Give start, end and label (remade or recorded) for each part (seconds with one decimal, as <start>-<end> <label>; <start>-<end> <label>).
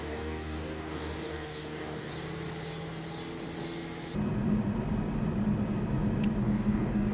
0.0-2.1 remade; 2.1-6.4 recorded; 6.4-7.1 remade